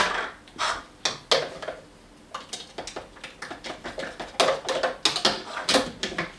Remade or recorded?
recorded